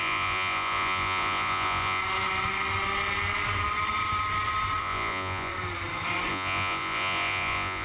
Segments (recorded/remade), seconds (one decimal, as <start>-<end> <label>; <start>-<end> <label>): 0.0-2.0 remade; 2.0-4.8 recorded; 4.8-5.5 remade; 5.5-6.3 recorded; 6.3-7.8 remade